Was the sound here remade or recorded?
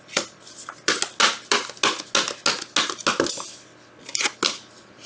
recorded